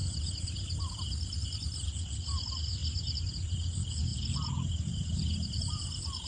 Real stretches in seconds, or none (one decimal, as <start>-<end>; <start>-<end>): 0.0-6.3